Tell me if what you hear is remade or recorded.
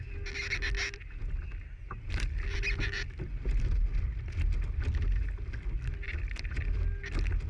recorded